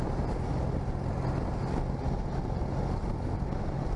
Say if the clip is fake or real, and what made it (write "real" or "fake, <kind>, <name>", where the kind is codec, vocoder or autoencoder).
real